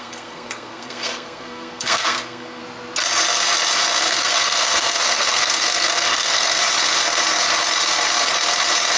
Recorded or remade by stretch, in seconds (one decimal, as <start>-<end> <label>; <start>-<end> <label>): 0.0-2.6 remade; 2.6-4.0 recorded; 4.0-6.6 remade; 6.6-9.0 recorded